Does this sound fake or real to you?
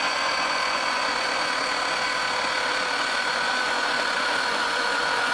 fake